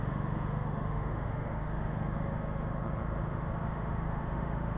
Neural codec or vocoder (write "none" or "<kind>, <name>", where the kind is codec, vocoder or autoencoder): autoencoder, DAC-VAE